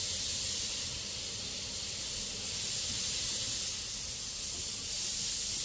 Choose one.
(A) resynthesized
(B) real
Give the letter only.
B